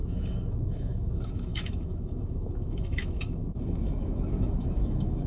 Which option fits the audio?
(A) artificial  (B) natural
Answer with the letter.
A